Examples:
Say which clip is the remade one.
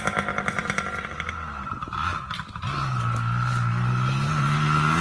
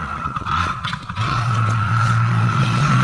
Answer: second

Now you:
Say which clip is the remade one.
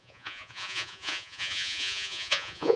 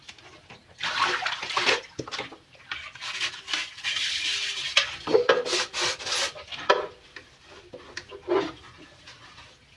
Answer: first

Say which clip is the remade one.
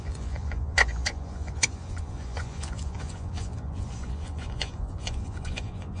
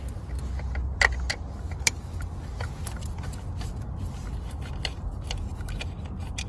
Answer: first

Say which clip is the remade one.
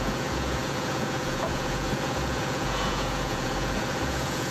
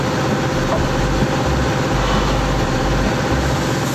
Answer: first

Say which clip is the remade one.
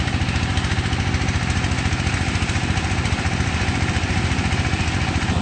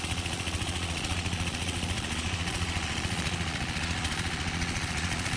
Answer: second